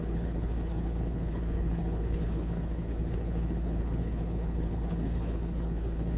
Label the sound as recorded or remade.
remade